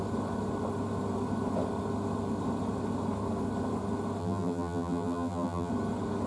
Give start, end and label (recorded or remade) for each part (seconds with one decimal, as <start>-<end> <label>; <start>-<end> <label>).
0.0-4.2 recorded; 4.2-5.7 remade; 5.7-6.3 recorded